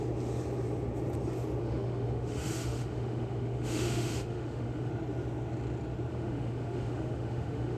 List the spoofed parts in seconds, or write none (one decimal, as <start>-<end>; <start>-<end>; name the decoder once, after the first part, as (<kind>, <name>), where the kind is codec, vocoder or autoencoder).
1.6-4.9 (autoencoder, DAC-VAE); 6.1-7.8